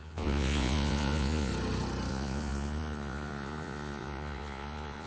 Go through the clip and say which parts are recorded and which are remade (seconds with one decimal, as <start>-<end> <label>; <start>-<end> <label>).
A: 0.0-1.5 remade; 1.5-2.1 recorded; 2.1-5.1 remade